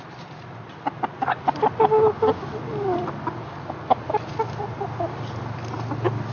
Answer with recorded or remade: recorded